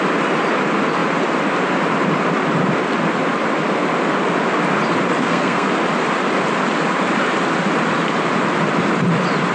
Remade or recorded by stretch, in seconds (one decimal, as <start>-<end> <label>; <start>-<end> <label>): 0.0-5.2 recorded; 5.2-5.7 remade; 5.7-9.5 recorded

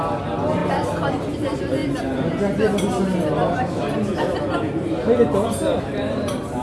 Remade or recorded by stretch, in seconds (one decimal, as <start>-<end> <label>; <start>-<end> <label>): 0.0-6.6 recorded